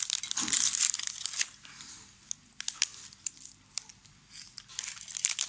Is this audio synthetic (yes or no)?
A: no